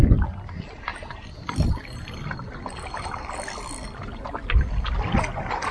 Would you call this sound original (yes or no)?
yes